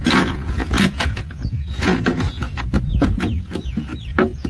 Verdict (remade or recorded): remade